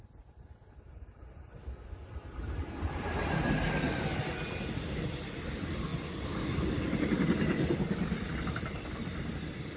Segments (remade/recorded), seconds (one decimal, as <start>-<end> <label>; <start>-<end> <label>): 0.0-9.8 recorded